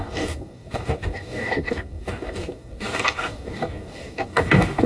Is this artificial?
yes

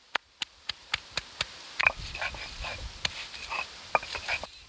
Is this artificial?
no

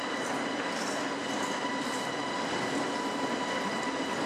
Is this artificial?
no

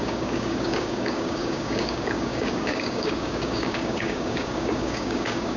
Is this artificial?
yes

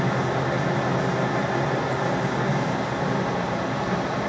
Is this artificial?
no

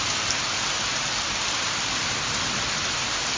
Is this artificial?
no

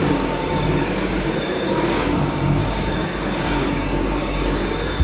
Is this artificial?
yes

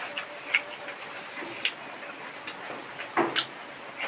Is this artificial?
no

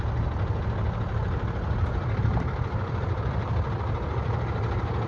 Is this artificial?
no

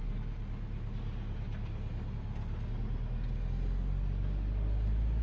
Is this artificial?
no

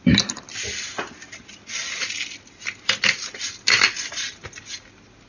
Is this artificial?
no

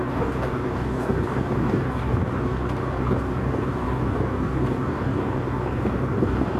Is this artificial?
yes